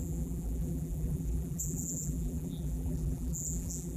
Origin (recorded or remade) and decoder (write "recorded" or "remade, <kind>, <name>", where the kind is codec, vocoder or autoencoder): remade, vocoder, BigVGAN v2